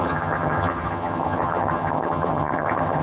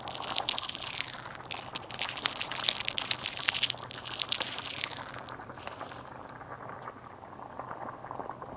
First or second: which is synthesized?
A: first